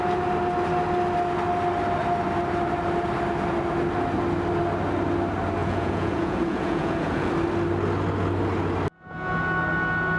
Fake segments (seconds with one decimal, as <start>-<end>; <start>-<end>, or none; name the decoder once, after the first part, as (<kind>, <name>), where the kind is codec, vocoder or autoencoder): 5.6-7.3 (vocoder, Vocos)